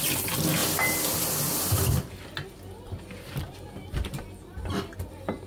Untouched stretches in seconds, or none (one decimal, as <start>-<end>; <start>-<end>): 0.0-5.5